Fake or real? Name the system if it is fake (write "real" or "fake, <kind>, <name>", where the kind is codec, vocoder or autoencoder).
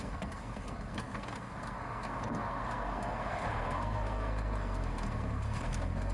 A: fake, codec, SNAC